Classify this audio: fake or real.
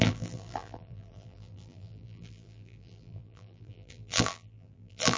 fake